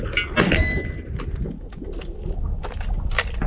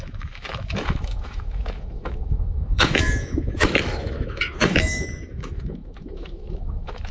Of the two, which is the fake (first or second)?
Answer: second